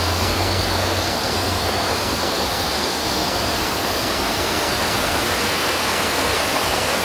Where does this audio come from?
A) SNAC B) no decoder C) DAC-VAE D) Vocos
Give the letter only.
A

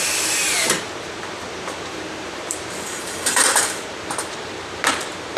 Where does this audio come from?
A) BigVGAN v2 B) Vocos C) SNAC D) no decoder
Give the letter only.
A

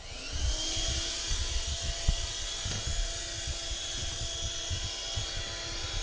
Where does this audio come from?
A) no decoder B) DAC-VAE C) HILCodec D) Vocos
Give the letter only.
A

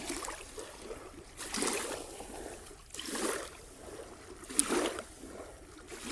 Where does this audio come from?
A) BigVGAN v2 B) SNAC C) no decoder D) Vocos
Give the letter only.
C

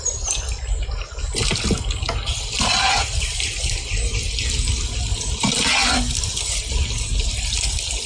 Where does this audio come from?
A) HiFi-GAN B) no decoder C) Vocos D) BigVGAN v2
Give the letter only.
B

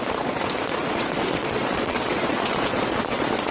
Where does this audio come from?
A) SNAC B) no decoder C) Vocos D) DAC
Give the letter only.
C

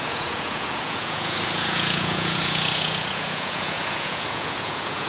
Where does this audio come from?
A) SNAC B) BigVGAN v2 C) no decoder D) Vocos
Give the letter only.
D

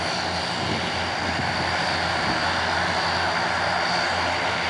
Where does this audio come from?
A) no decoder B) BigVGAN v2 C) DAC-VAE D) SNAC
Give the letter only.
A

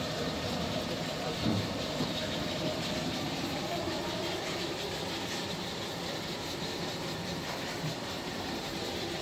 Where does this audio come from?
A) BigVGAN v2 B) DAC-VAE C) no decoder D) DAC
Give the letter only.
C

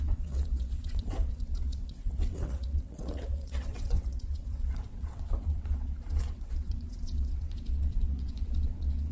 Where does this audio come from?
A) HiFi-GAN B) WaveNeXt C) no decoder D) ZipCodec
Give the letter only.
B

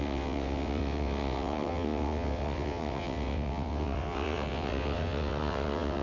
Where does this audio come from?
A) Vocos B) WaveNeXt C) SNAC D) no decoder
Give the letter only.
B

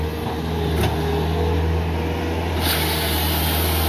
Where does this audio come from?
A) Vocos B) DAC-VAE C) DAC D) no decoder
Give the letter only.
D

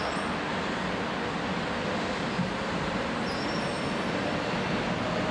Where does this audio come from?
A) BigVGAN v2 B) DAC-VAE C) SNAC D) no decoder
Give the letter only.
D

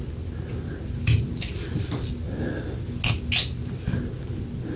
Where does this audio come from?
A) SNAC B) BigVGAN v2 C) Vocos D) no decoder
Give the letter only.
D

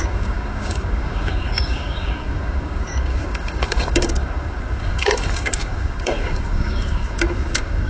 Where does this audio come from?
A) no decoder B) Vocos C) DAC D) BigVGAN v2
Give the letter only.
C